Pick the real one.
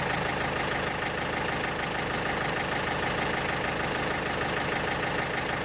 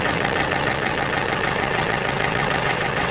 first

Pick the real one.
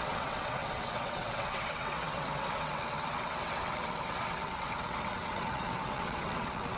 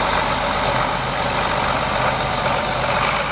second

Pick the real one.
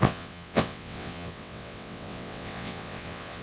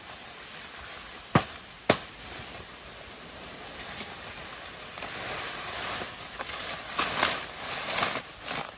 second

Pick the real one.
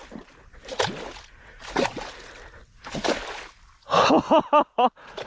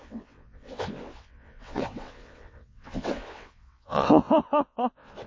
first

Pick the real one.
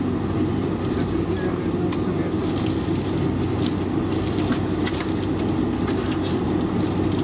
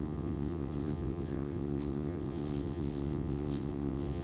first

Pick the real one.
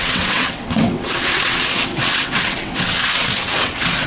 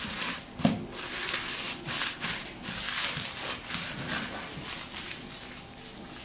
second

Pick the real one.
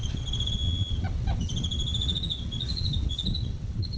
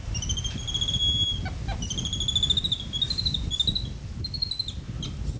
second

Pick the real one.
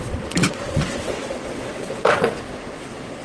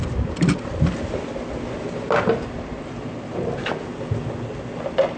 second